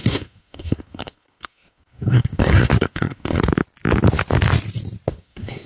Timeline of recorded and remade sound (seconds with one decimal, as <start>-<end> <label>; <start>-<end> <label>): 0.0-3.4 remade; 3.4-5.1 recorded; 5.1-5.7 remade